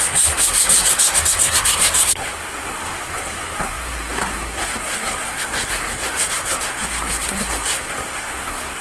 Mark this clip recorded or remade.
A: remade